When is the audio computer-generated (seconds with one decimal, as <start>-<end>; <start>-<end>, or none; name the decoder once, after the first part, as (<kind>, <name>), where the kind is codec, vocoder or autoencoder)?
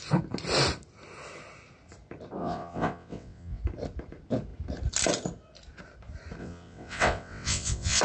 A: 2.4-3.6 (vocoder, WaveNeXt); 6.4-8.0